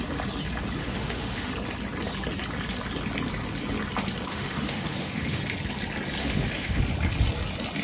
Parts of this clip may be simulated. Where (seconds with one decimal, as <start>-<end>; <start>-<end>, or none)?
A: 0.8-1.5; 4.3-5.4; 6.2-6.8